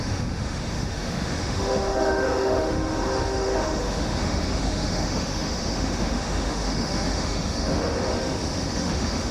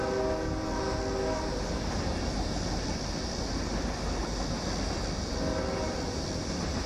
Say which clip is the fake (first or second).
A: first